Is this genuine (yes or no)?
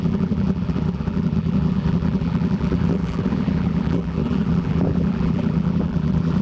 no